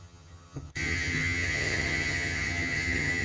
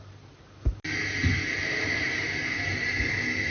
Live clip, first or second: second